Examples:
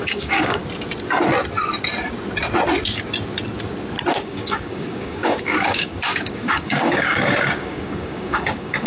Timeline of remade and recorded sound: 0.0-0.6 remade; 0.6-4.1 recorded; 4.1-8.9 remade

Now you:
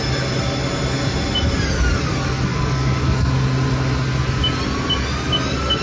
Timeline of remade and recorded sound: 0.0-2.5 recorded; 2.5-3.3 remade; 3.3-5.8 recorded

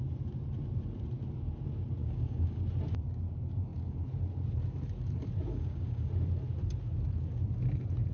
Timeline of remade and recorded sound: 0.0-2.0 recorded; 2.0-2.6 remade; 2.6-5.5 recorded; 5.5-6.1 remade; 6.1-8.1 recorded

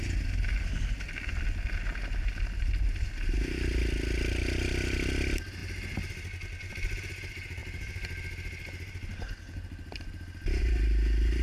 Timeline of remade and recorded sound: 0.0-11.4 recorded

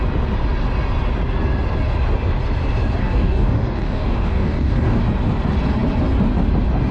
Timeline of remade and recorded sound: 0.0-3.0 recorded; 3.0-5.0 remade; 5.0-6.9 recorded

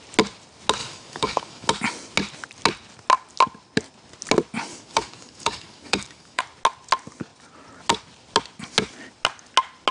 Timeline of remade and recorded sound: 0.0-0.8 recorded; 0.8-1.7 remade; 1.7-4.7 recorded; 4.7-6.4 remade; 6.4-9.9 recorded